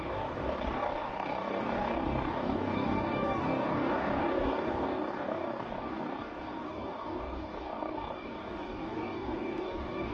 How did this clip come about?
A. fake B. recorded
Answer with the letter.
A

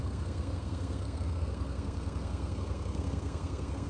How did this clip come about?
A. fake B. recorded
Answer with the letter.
A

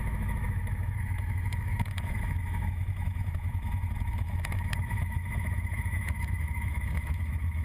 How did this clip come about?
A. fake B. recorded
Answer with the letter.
A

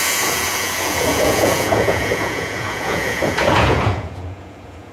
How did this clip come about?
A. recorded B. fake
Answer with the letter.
B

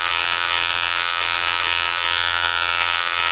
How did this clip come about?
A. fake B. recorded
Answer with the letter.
A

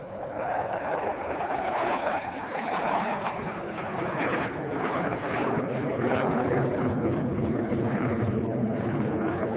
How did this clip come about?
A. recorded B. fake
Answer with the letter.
B